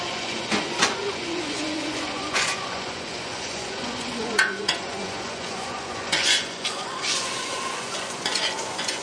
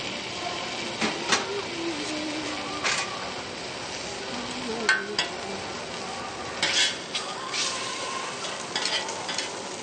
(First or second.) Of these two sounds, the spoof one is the first